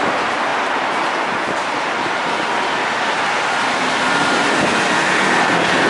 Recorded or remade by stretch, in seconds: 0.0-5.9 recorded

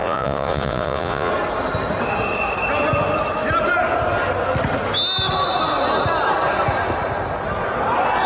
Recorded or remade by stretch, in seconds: 0.0-1.3 remade; 1.3-8.3 recorded

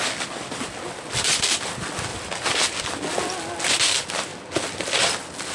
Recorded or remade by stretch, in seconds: 0.0-4.3 recorded; 4.3-5.0 remade; 5.0-5.5 recorded

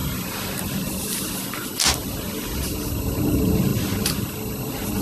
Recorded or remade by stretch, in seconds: 0.0-5.0 recorded

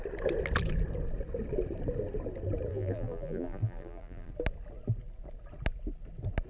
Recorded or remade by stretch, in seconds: 0.0-2.7 recorded; 2.7-4.3 remade; 4.3-6.5 recorded

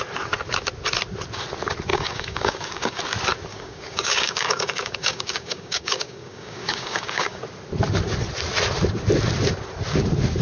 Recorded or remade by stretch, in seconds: 0.0-1.9 recorded; 1.9-3.0 remade; 3.0-3.5 recorded; 3.5-7.4 remade; 7.4-10.4 recorded

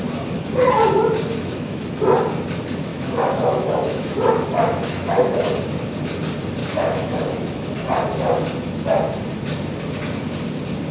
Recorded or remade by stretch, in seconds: 0.0-1.3 recorded; 1.3-2.0 remade; 2.0-2.9 recorded; 2.9-5.4 remade; 5.4-6.6 recorded; 6.6-7.7 remade; 7.7-10.9 recorded

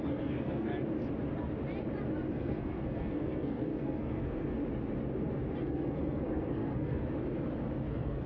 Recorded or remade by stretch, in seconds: 0.0-0.7 remade; 0.7-2.3 recorded; 2.3-4.6 remade; 4.6-5.6 recorded; 5.6-7.0 remade; 7.0-7.9 recorded; 7.9-8.3 remade